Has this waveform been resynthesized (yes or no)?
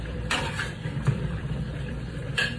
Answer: yes